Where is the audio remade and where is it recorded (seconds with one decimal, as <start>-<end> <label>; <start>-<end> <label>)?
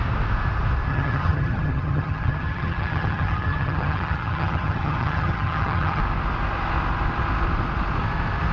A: 0.0-0.9 recorded; 0.9-6.0 remade; 6.0-8.5 recorded